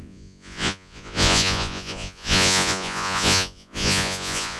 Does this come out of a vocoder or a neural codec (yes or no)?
yes